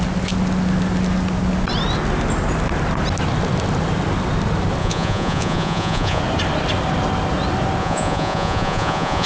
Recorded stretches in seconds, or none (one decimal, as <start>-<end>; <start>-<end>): 0.0-4.8; 6.2-7.8